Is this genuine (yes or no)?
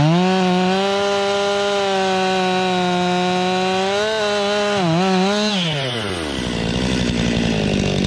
yes